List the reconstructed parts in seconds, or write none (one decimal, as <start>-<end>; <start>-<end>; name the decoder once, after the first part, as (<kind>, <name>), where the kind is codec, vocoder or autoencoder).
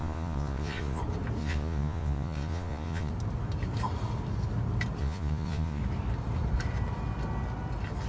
0.0-1.0 (vocoder, Vocos); 1.4-3.1; 5.0-5.8